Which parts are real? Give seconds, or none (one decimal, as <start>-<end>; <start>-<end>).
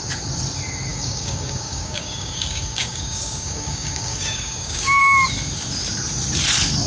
0.0-0.9; 5.0-6.9